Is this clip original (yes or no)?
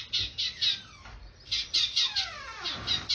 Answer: yes